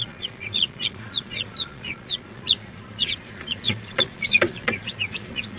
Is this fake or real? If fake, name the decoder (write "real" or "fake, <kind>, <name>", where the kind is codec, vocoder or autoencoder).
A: fake, vocoder, Vocos